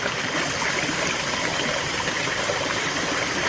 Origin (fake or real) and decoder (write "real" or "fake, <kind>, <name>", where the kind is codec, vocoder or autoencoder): real